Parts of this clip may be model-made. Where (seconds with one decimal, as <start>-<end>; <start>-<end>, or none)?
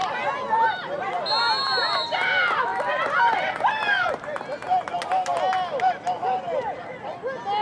none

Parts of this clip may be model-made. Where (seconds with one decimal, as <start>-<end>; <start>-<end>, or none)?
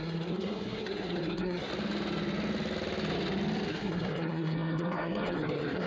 0.0-1.7; 3.7-5.9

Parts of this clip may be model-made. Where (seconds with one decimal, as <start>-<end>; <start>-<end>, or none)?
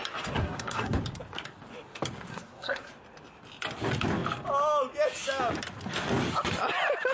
0.4-1.0; 2.3-2.9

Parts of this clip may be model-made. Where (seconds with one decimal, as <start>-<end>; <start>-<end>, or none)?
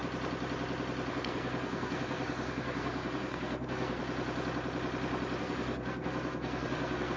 1.1-4.0; 5.4-7.2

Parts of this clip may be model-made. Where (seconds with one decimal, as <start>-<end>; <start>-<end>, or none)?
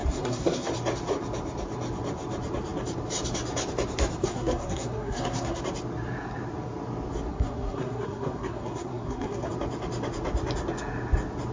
0.0-0.7; 4.2-5.6; 7.3-9.5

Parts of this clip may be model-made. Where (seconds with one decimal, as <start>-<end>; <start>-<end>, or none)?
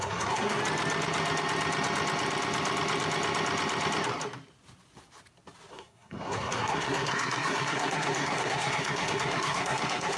0.0-0.6; 5.7-10.2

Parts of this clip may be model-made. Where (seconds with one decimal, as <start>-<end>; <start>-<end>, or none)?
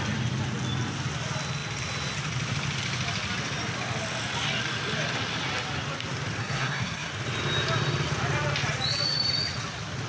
6.4-7.1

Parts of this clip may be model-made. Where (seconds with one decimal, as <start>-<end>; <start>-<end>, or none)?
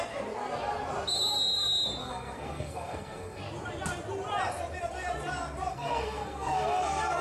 2.0-3.4; 5.7-7.2